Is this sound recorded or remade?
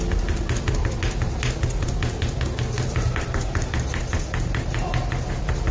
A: recorded